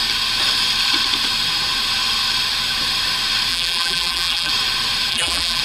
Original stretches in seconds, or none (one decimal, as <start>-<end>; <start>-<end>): 0.0-3.5; 4.5-5.1